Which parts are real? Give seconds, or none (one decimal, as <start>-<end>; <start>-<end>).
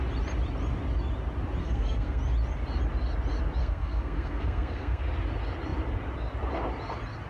0.0-1.6; 2.2-3.6; 5.0-7.3